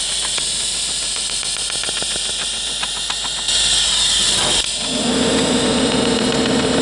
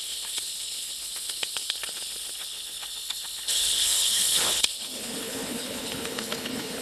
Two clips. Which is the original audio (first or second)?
first